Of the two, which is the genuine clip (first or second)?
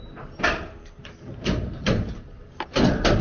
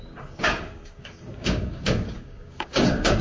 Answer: first